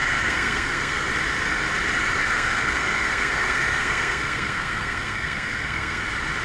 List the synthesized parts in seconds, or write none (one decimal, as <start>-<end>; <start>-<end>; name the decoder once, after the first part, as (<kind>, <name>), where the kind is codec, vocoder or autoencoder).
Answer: 0.0-1.1 (codec, SNAC); 2.2-6.0